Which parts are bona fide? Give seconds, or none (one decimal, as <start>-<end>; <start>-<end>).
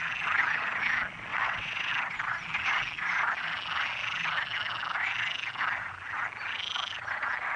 0.0-1.3; 1.9-7.6